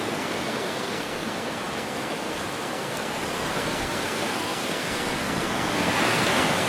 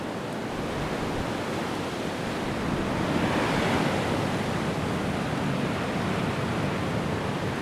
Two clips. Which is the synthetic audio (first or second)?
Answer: first